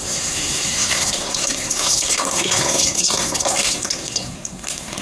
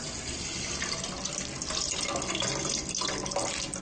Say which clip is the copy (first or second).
first